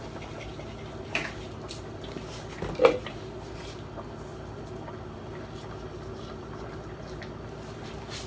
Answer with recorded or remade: recorded